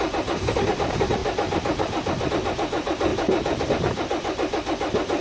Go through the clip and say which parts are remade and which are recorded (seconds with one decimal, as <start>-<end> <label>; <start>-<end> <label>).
0.0-5.2 recorded